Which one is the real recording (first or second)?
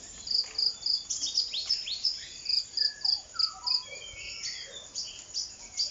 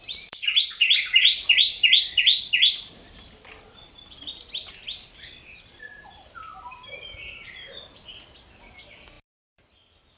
first